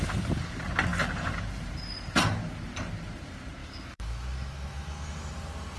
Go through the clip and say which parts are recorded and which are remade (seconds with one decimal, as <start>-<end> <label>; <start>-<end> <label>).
0.0-3.6 recorded; 3.6-5.3 remade; 5.3-5.8 recorded